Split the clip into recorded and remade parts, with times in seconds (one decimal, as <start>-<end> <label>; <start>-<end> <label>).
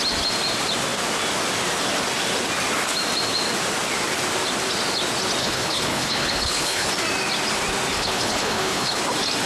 0.0-5.4 recorded; 5.4-6.9 remade; 6.9-7.9 recorded; 7.9-9.0 remade; 9.0-9.5 recorded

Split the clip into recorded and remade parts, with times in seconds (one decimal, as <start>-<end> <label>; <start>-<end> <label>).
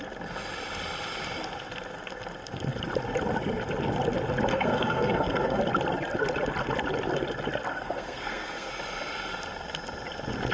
0.0-4.5 recorded; 4.5-5.6 remade; 5.6-7.7 recorded; 7.7-8.7 remade; 8.7-10.5 recorded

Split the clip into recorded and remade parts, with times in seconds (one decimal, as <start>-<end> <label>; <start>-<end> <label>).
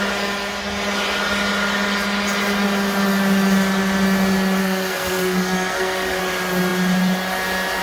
0.0-4.6 recorded; 4.6-6.2 remade; 6.2-7.8 recorded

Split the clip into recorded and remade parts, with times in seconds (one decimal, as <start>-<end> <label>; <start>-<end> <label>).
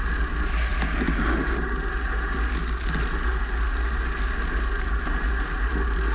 0.0-6.1 recorded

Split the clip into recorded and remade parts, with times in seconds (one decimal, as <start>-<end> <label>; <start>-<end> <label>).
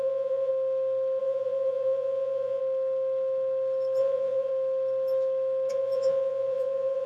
0.0-0.5 remade; 0.5-1.2 recorded; 1.2-2.6 remade; 2.6-4.0 recorded; 4.0-4.5 remade; 4.5-5.7 recorded; 5.7-7.1 remade